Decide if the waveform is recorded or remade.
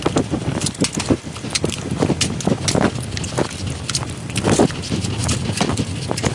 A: recorded